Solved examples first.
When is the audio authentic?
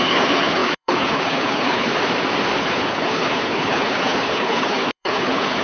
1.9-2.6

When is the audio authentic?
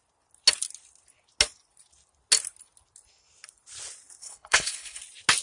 0.0-4.2; 5.0-5.4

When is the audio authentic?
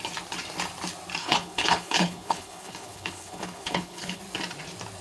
0.0-1.2; 4.2-5.0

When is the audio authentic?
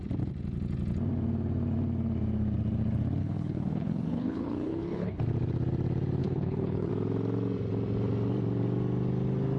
0.0-3.2; 5.2-6.2; 6.9-9.6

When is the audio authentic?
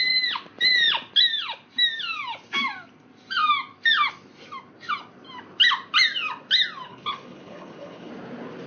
0.0-6.9; 8.1-8.7